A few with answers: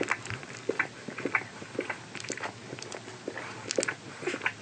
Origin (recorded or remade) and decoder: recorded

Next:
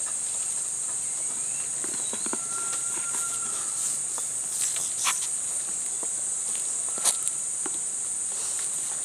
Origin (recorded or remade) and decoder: recorded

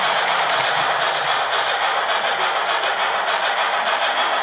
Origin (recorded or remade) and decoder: recorded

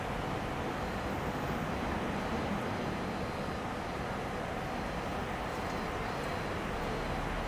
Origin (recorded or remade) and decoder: recorded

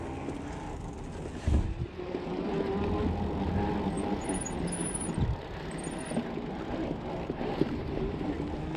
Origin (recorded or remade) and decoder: recorded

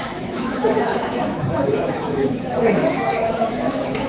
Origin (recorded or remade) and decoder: remade, autoencoder, DAC-VAE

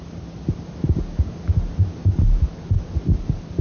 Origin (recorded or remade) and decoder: recorded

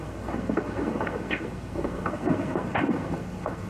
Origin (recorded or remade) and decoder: remade, codec, SNAC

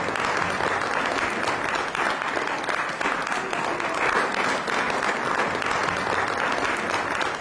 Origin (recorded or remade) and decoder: recorded